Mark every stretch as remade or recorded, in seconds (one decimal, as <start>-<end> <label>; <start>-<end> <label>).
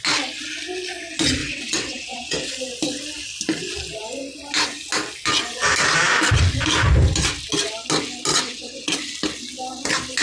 0.0-1.4 recorded; 1.4-2.5 remade; 2.5-8.3 recorded; 8.3-9.0 remade; 9.0-10.2 recorded